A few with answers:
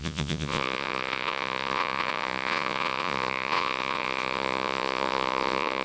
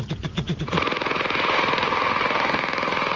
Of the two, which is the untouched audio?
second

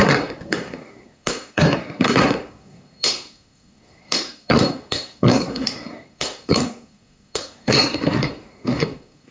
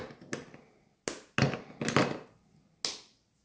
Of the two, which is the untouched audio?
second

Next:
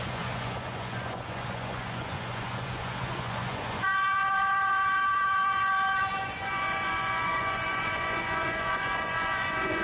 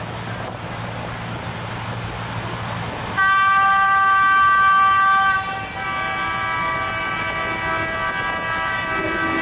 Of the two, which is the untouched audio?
second